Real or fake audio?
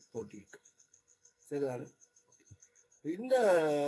fake